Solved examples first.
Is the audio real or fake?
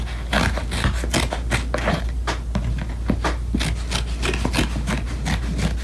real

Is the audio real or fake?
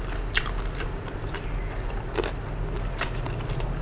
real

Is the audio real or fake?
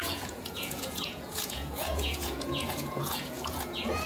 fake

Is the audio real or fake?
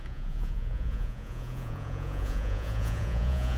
fake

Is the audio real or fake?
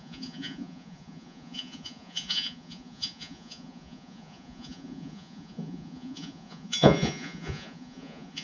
fake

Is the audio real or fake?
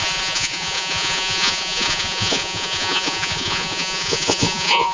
fake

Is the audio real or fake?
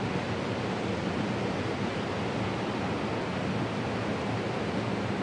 real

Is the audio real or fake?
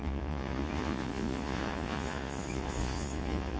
fake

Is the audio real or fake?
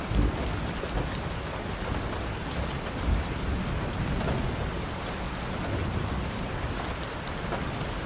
real